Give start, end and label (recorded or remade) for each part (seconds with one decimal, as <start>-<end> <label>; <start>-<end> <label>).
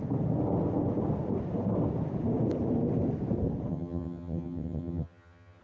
0.0-3.7 recorded; 3.7-5.6 remade